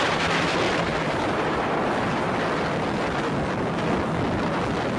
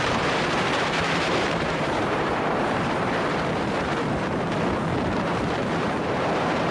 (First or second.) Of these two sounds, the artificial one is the second